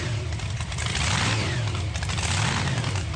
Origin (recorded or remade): remade